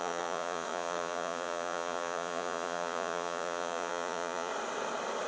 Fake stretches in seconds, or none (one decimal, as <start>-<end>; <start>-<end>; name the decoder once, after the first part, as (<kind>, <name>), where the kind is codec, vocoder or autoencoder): 0.0-4.5 (vocoder, Vocos)